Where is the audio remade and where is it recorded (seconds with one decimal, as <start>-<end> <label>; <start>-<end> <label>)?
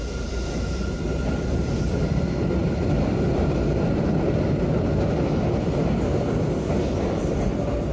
0.0-7.9 recorded